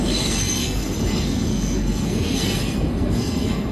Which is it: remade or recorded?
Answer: remade